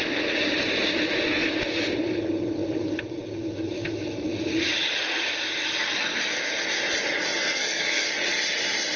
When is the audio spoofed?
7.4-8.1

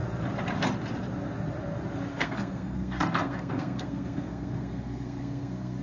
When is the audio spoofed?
2.1-5.8

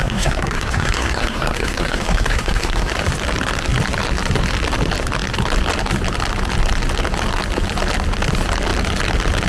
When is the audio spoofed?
0.0-2.9

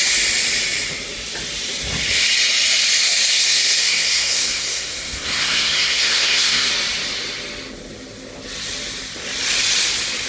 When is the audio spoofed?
3.3-6.7

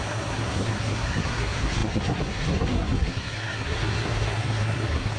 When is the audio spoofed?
0.0-5.2

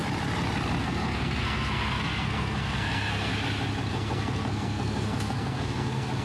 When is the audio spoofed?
0.8-3.3; 3.9-6.2

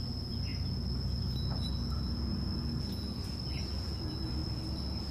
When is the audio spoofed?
none